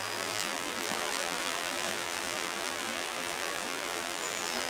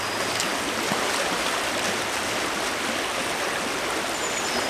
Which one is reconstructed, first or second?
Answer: first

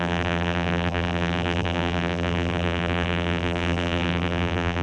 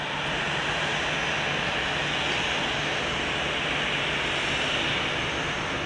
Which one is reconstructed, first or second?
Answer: first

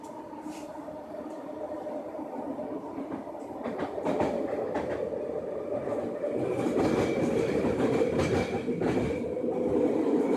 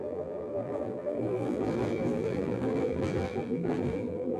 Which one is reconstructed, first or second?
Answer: second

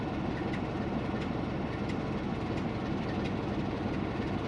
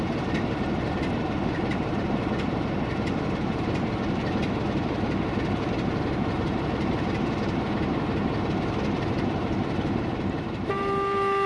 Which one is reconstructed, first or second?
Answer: second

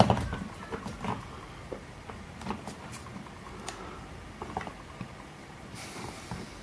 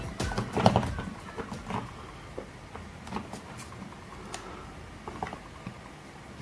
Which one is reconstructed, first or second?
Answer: first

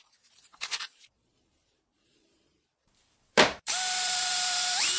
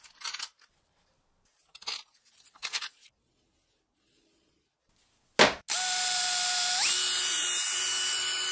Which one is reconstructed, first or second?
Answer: first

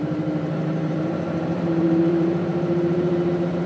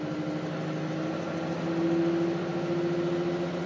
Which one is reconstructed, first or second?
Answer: first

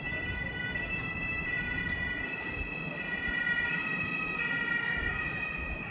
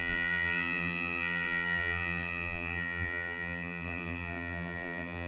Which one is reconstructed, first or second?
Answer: second